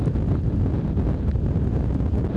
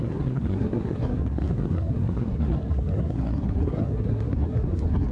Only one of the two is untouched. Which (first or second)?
first